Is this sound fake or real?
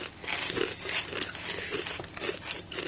real